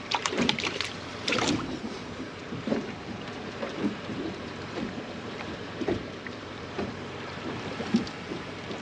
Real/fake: fake